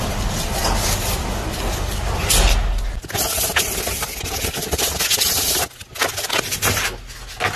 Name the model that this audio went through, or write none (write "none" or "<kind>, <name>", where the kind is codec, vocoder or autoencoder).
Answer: none